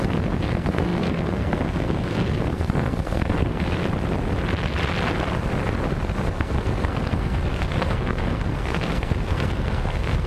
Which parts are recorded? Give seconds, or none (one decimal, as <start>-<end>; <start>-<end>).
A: 3.8-6.3